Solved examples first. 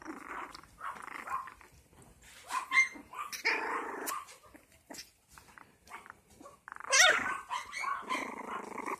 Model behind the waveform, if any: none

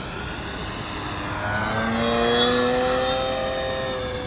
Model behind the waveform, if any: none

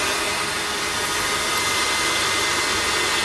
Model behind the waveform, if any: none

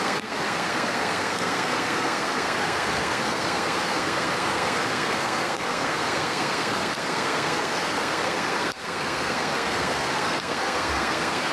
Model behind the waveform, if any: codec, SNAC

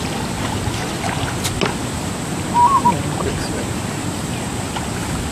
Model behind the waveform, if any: none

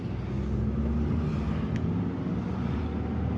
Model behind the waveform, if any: none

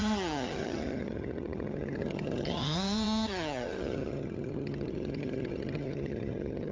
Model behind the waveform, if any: vocoder, HiFi-GAN